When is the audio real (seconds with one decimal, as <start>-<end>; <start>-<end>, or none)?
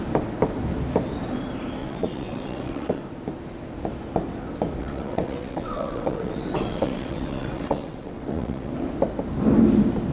0.0-1.8; 3.0-4.8; 8.7-10.1